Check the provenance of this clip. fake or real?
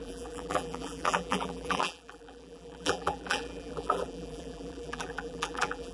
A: fake